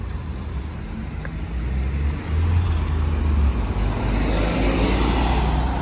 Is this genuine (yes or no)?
yes